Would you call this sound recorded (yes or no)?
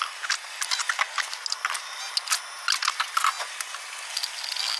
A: yes